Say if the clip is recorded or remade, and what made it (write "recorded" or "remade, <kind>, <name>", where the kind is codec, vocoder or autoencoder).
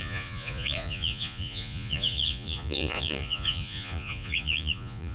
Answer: remade, vocoder, Vocos